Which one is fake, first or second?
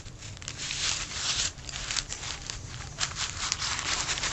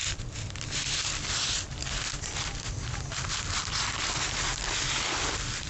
first